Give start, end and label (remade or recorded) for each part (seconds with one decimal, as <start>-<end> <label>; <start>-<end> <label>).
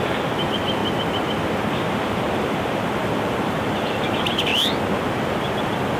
0.0-0.8 remade; 0.8-1.9 recorded; 1.9-6.0 remade